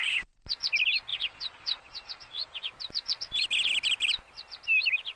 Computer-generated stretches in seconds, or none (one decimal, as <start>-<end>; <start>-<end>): 0.0-0.5; 1.1-2.7

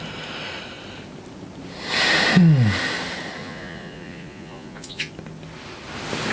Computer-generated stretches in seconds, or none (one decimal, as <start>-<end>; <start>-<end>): 3.4-5.1

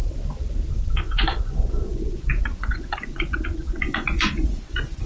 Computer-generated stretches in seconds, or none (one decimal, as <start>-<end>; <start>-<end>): 0.7-5.1

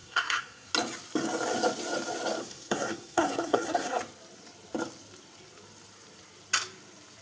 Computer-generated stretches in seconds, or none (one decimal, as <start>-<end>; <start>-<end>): 0.0-0.7; 2.4-4.0